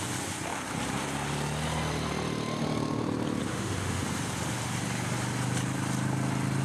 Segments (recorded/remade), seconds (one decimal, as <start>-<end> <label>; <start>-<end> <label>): 0.0-3.5 recorded; 3.5-4.0 remade; 4.0-6.6 recorded